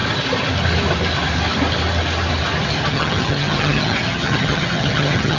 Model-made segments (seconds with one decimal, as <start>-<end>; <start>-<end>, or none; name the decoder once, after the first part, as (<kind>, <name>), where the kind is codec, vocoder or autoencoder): 2.9-5.4 (vocoder, HiFi-GAN)